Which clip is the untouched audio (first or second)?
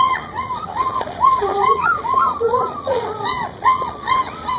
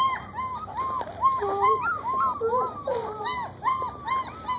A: second